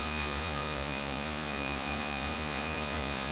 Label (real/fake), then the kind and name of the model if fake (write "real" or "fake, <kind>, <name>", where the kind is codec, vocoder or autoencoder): fake, vocoder, Vocos